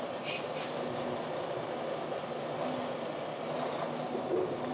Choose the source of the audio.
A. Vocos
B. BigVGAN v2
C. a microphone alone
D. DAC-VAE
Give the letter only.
C